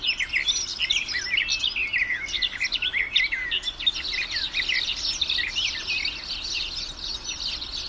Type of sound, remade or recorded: recorded